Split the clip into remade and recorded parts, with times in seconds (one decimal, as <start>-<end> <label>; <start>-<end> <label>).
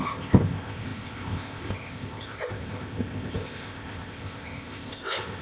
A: 0.0-5.4 remade